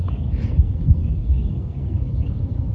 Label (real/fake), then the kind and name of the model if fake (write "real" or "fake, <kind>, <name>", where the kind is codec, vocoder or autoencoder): fake, codec, SNAC